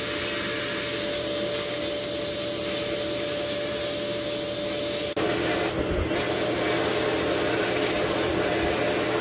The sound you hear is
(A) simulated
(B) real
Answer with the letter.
B